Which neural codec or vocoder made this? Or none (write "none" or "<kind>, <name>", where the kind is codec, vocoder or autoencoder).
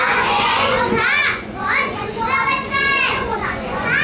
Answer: vocoder, Vocos